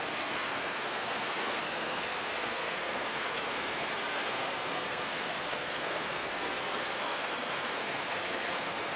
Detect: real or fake fake